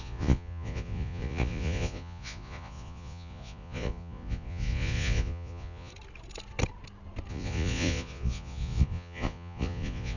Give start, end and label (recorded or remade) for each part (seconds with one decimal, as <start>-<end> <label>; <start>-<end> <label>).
0.0-5.9 remade; 5.9-7.3 recorded; 7.3-10.2 remade